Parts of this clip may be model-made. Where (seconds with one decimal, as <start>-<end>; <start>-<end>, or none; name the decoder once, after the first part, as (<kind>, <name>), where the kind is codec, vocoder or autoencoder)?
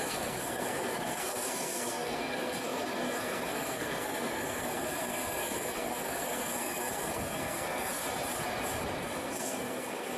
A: 0.0-8.0 (codec, SNAC); 9.0-10.2